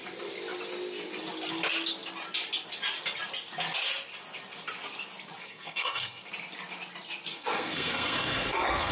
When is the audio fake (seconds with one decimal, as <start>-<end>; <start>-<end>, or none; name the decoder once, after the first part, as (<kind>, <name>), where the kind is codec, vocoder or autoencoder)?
5.4-6.3 (codec, SNAC); 7.3-8.9